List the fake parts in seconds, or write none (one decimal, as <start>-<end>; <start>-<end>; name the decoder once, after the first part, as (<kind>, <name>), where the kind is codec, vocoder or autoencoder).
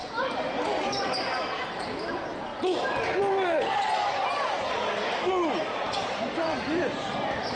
0.0-0.8 (vocoder, BigVGAN v2); 6.5-7.6